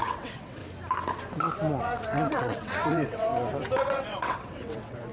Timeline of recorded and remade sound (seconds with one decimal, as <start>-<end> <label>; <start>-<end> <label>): 0.0-0.6 remade; 0.6-1.8 recorded; 1.8-3.3 remade; 3.3-3.8 recorded; 3.8-5.1 remade

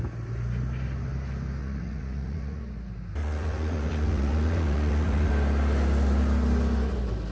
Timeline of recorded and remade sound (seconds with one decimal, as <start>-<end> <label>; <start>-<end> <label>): 0.0-1.6 recorded; 1.6-2.6 remade; 2.6-3.2 recorded; 3.2-5.3 remade; 5.3-7.3 recorded

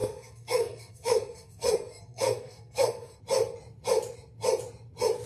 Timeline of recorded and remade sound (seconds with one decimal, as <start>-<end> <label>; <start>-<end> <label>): 0.0-3.2 remade; 3.2-5.3 recorded

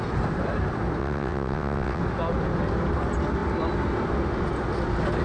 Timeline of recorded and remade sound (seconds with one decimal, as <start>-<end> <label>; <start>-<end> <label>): 0.0-1.0 recorded; 1.0-2.0 remade; 2.0-5.2 recorded

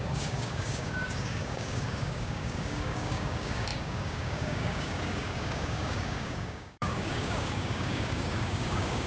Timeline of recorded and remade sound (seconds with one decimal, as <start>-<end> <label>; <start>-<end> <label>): 0.0-9.1 remade